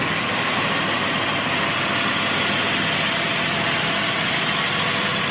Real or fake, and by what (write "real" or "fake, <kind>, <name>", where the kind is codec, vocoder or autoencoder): real